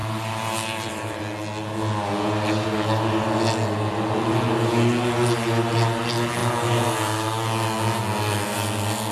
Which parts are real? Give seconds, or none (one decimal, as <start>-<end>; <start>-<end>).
1.2-9.1